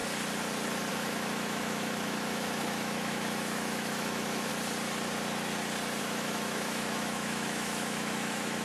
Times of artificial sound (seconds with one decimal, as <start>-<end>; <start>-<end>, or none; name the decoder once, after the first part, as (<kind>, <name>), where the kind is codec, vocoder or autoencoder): 0.9-4.5 (autoencoder, DAC-VAE); 6.0-8.6